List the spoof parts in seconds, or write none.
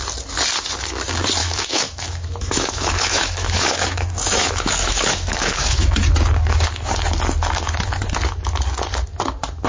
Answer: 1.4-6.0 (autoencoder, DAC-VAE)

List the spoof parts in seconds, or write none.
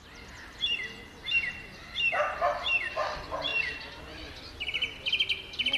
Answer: 1.2-1.9 (vocoder, BigVGAN v2)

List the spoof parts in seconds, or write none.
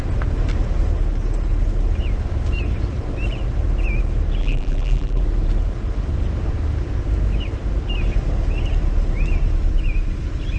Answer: 4.4-5.2 (vocoder, BigVGAN v2)